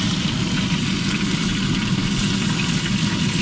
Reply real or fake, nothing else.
real